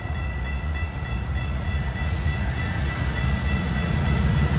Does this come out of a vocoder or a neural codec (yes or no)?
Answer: yes